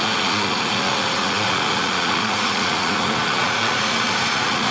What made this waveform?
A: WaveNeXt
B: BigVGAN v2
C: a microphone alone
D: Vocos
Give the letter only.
D